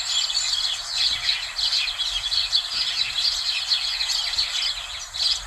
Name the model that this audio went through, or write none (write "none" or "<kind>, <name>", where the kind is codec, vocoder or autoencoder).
none